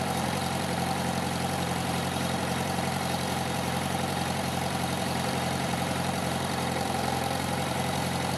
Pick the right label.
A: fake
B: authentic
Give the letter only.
A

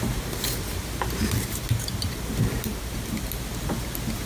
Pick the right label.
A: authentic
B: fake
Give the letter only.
A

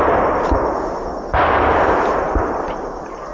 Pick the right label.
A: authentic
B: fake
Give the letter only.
A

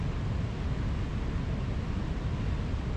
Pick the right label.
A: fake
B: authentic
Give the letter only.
B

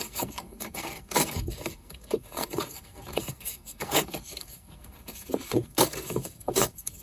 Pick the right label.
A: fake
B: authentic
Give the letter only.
A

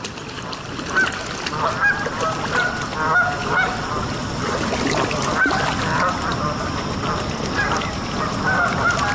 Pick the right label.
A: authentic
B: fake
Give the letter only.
A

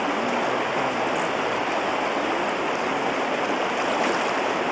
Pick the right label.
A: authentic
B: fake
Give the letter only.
A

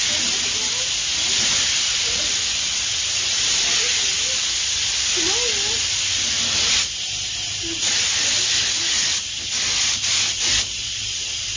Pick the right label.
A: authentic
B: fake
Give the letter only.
A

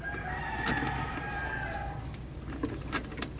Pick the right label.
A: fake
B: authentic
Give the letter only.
B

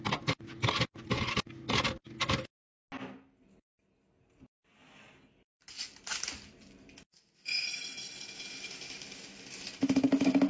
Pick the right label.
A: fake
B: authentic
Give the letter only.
B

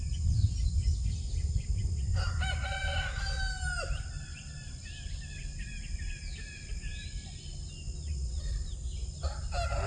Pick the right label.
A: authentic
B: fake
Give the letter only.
A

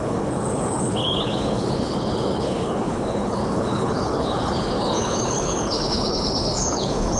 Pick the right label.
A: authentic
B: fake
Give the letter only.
B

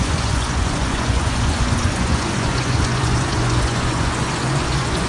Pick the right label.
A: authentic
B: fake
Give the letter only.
B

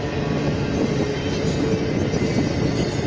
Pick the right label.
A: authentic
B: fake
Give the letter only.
A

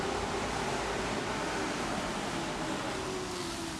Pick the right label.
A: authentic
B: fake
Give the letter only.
A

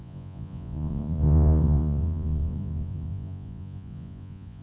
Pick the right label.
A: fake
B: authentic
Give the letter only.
A